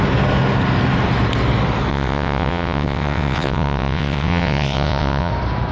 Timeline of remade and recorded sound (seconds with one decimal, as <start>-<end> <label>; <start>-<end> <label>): 0.0-1.9 recorded; 1.9-5.3 remade; 5.3-5.7 recorded